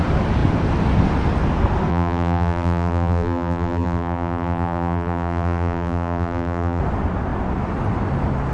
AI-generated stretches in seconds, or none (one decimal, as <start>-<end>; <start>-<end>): 1.9-6.8